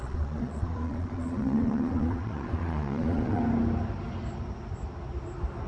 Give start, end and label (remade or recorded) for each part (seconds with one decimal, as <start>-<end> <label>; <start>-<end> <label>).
0.0-3.4 remade; 3.4-5.7 recorded